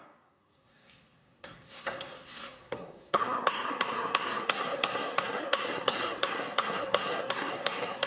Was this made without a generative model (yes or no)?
no